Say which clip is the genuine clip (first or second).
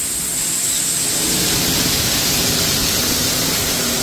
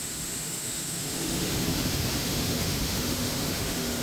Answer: first